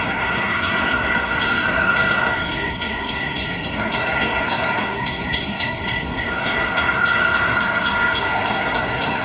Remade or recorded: remade